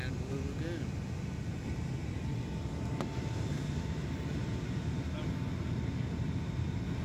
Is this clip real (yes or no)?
yes